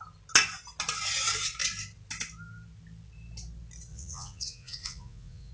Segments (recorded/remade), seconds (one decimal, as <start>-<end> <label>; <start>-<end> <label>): 0.0-3.9 recorded; 3.9-5.5 remade